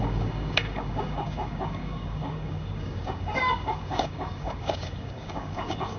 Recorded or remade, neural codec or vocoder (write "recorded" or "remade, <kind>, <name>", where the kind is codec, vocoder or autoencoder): remade, codec, DAC